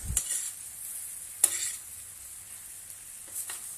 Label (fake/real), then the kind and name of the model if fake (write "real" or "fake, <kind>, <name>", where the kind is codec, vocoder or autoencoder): real